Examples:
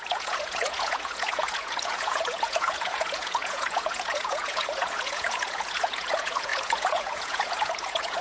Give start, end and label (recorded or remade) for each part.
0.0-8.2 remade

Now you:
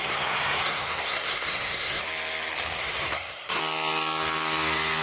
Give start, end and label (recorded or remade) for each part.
0.0-2.0 remade; 2.0-2.8 recorded; 2.8-3.6 remade; 3.6-5.0 recorded

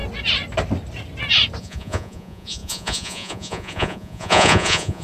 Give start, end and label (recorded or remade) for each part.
0.0-1.6 recorded; 1.6-5.0 remade

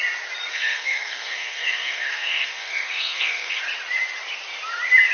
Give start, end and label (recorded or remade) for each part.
0.0-0.5 recorded; 0.5-3.6 remade; 3.6-5.1 recorded